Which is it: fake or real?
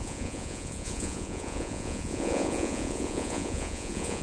fake